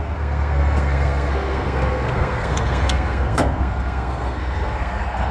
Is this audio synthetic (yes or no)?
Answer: yes